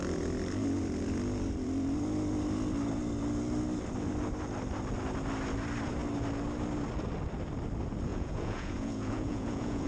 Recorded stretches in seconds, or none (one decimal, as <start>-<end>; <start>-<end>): 0.0-8.1